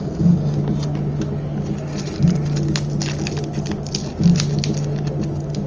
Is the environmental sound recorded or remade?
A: recorded